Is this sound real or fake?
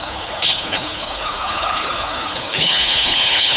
fake